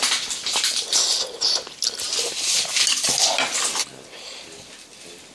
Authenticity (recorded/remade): recorded